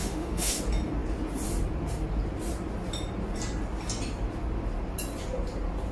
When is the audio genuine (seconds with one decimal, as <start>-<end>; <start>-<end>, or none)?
0.6-5.9